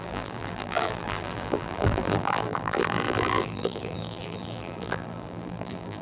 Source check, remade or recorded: remade